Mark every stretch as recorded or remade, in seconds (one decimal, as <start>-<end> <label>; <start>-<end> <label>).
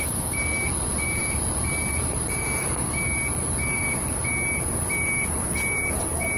0.0-6.4 remade